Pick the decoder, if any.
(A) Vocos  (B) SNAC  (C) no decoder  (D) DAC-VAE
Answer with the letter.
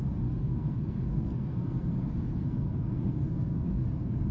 B